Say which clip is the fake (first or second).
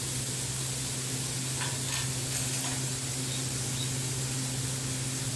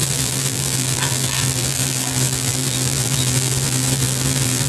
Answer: second